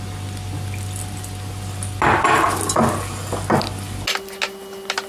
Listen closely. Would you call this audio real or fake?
real